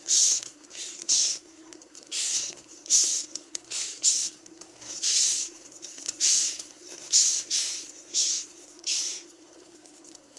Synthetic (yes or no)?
yes